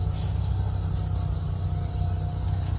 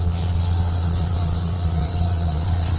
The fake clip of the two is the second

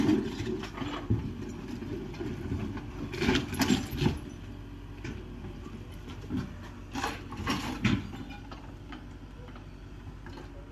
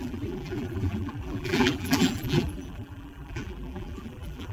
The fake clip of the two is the second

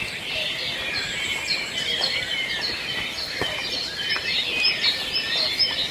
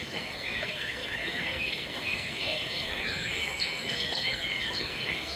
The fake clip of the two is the second